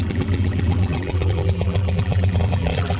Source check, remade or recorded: remade